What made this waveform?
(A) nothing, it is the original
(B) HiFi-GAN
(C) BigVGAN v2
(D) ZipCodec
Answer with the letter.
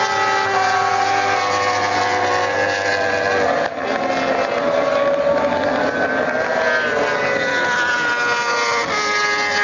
A